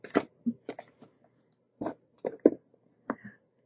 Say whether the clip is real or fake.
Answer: fake